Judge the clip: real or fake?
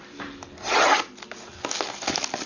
real